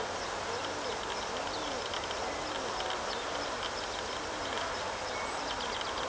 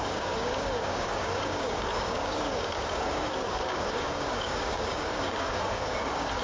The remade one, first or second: second